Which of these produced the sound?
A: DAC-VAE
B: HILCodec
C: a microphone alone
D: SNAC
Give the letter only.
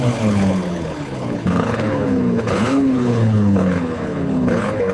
B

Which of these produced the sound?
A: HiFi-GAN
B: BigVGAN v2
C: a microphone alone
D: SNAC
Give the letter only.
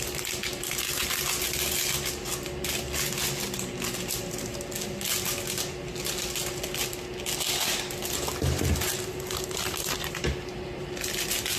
C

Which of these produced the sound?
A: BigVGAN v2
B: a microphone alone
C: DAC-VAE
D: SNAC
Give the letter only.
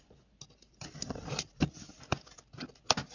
B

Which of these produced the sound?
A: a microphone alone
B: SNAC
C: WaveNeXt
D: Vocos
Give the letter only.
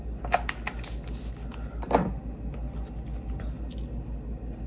A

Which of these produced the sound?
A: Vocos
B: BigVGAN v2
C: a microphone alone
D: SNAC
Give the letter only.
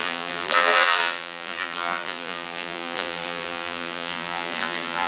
B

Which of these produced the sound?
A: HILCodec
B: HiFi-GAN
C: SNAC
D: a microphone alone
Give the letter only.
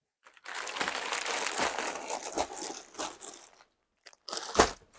D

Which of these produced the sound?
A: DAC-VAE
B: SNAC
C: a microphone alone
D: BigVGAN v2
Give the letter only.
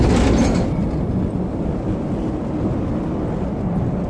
C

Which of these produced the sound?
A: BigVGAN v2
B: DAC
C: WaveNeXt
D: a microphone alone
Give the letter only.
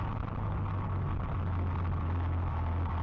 D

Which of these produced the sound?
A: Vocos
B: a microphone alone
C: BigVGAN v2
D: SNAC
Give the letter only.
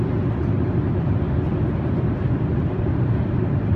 B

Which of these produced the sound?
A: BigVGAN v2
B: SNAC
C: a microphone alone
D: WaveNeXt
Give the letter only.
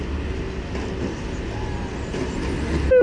C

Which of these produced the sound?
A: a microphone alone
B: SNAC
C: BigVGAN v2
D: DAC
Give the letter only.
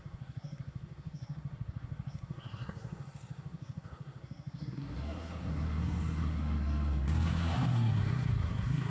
B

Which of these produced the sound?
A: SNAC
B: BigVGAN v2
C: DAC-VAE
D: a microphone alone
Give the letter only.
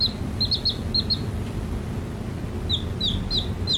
D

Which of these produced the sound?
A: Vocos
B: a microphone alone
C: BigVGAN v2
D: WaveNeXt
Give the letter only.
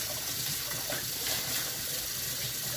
B